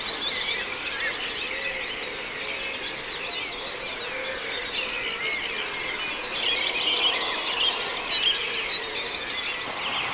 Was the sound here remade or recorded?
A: recorded